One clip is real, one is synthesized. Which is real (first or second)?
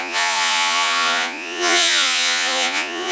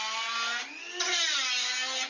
second